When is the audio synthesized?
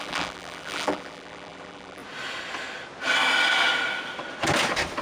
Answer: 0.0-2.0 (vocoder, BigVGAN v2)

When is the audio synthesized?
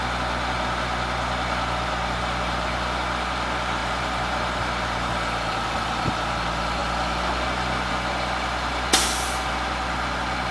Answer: 3.8-6.3 (vocoder, BigVGAN v2)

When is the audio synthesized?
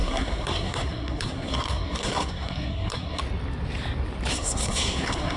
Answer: 0.0-3.2 (codec, SNAC); 4.3-5.4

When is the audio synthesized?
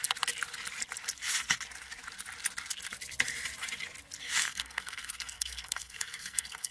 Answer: 4.4-6.7 (codec, SNAC)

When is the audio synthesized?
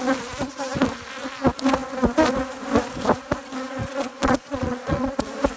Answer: 3.8-5.1 (vocoder, Vocos)